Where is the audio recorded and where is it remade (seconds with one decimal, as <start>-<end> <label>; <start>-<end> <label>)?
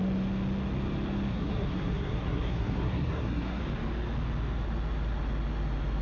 0.0-1.3 recorded; 1.3-3.6 remade; 3.6-6.0 recorded